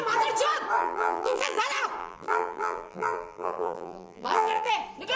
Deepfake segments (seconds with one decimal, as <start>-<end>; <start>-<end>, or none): 0.8-1.6; 2.0-4.7

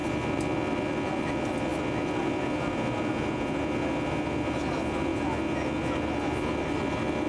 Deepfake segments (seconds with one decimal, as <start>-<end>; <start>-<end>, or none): none

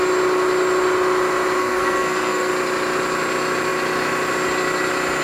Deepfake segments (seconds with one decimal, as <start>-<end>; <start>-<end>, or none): 1.6-2.5

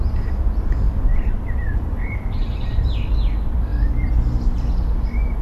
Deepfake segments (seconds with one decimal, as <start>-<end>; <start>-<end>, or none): 1.1-2.9

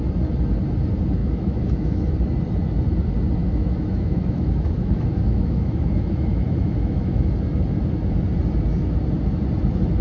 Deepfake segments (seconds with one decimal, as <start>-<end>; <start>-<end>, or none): 1.2-2.1; 3.4-7.3

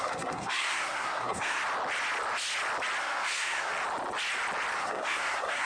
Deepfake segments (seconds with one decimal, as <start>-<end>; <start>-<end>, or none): 0.0-1.6; 3.0-3.7; 4.8-5.7